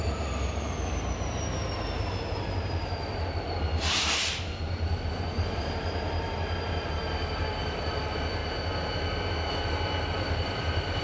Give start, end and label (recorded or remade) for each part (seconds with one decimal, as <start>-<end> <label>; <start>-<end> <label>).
0.0-8.4 remade; 8.4-9.5 recorded; 9.5-11.0 remade